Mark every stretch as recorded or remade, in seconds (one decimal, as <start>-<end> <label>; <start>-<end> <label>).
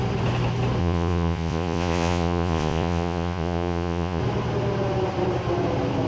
0.0-0.8 recorded; 0.8-4.2 remade; 4.2-6.1 recorded